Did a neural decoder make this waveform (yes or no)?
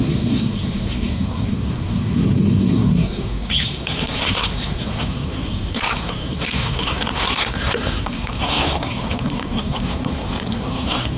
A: yes